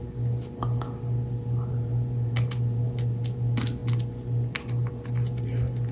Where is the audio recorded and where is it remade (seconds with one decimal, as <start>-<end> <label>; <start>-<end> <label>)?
0.0-5.9 recorded